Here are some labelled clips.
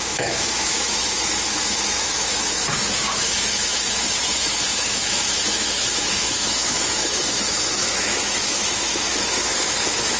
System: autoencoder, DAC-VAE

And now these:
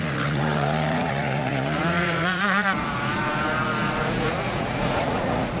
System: vocoder, Vocos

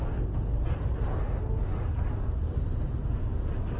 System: none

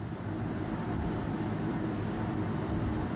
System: vocoder, BigVGAN v2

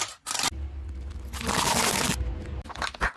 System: none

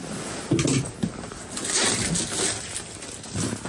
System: none